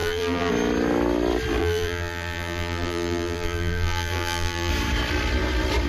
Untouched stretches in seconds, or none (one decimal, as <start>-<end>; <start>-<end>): 0.5-1.6; 4.7-5.9